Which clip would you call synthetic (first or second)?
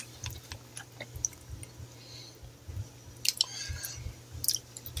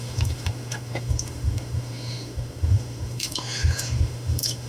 second